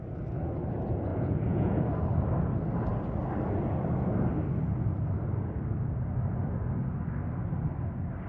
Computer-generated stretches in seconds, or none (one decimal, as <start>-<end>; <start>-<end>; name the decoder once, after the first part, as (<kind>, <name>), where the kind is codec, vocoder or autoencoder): 1.1-1.8 (vocoder, Vocos)